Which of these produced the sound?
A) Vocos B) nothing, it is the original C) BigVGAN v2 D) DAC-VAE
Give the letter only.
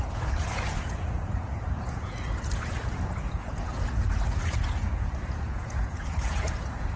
A